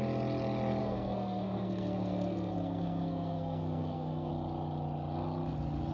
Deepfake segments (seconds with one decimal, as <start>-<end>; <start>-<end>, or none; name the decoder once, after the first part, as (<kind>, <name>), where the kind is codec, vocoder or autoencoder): 0.8-4.3 (codec, SNAC)